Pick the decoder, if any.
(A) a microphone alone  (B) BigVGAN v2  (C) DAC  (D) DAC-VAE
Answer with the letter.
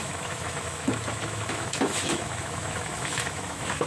D